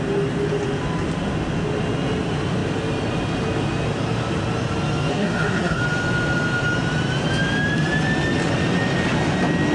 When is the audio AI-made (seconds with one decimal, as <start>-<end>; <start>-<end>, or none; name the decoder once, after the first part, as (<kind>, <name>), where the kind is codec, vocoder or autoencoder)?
5.1-5.8 (codec, SNAC)